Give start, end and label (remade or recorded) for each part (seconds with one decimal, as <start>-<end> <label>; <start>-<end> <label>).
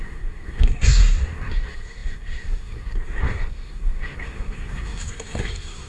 0.0-5.9 remade